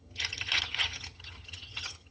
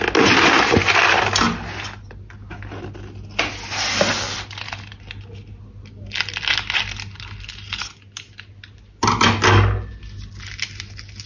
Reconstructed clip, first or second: first